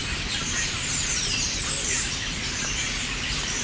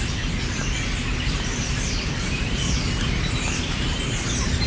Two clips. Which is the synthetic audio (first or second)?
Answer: first